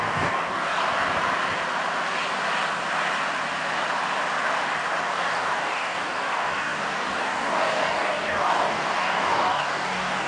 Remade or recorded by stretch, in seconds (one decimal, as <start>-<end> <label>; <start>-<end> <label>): 0.0-0.8 remade; 0.8-5.0 recorded; 5.0-10.3 remade